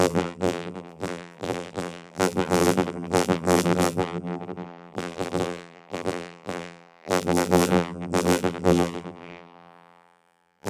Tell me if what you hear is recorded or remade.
remade